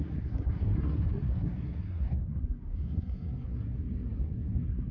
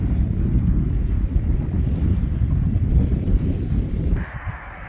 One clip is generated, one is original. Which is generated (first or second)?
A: first